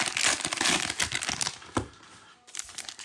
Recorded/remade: recorded